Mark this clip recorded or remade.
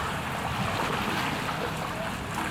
recorded